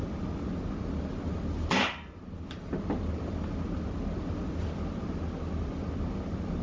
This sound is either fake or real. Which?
real